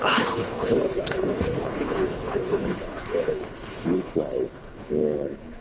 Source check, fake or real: fake